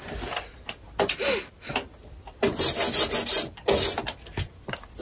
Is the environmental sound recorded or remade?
recorded